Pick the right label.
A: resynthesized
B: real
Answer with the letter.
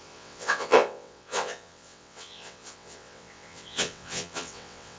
A